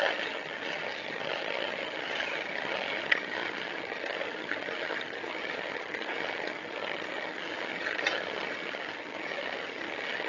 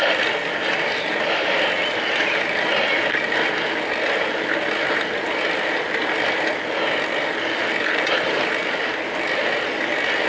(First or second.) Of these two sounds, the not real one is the first